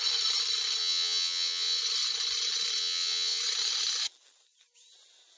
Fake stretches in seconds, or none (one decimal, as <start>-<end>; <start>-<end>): 0.8-1.8; 2.8-3.4